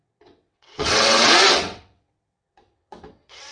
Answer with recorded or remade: remade